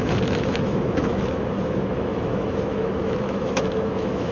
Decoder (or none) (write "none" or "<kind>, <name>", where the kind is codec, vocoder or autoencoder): autoencoder, DAC-VAE